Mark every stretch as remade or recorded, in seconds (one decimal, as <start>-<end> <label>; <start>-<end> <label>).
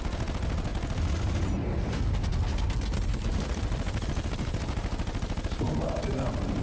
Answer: 0.0-6.6 recorded